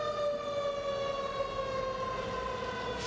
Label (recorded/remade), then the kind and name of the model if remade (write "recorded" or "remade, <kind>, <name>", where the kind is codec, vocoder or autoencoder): recorded